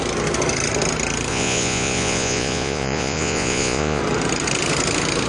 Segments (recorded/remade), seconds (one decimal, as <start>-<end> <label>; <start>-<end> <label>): 0.0-1.3 recorded; 1.3-4.0 remade; 4.0-5.3 recorded